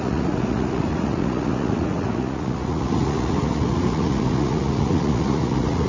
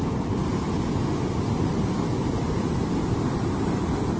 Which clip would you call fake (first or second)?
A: first